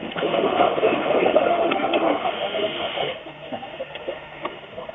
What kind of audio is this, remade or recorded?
remade